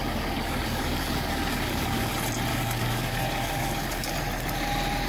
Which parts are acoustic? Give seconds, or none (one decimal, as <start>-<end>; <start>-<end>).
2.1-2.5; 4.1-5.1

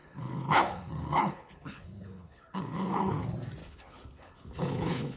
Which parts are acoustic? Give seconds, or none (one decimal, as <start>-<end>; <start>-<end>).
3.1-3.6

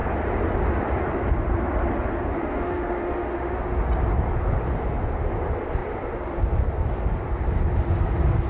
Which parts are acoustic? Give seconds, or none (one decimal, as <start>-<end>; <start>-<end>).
0.0-2.4; 3.6-8.5